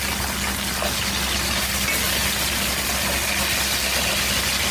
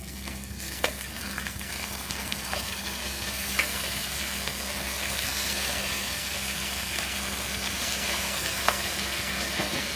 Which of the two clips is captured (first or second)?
first